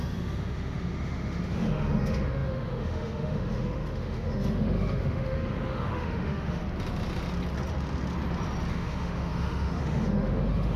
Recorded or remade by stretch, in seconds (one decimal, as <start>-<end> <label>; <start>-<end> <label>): 0.0-6.6 remade; 6.6-8.7 recorded; 8.7-10.8 remade